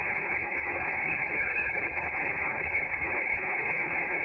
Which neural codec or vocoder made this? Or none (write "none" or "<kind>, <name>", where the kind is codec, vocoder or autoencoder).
codec, HILCodec